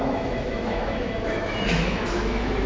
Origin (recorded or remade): remade